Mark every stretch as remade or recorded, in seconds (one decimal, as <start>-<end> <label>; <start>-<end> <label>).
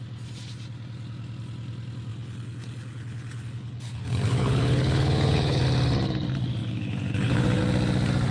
0.0-2.1 recorded; 2.1-5.6 remade; 5.6-6.6 recorded; 6.6-7.6 remade; 7.6-8.3 recorded